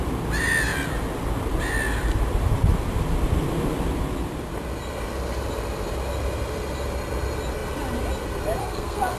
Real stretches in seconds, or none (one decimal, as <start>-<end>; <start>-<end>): 0.0-8.6